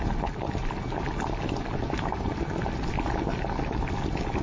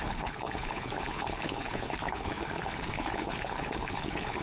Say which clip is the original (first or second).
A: first